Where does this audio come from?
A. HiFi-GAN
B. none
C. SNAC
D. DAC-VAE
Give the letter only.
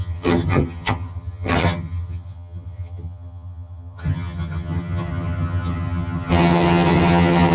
A